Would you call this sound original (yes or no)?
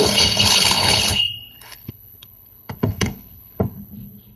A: no